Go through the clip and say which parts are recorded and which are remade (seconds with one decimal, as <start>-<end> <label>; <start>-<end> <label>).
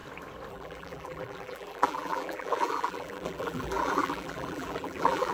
0.0-0.5 recorded; 0.5-5.3 remade